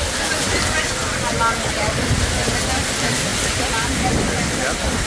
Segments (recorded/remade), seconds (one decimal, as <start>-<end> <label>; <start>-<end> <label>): 0.0-5.1 recorded